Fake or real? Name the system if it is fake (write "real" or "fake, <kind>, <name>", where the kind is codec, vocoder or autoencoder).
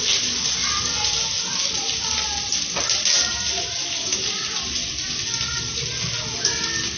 real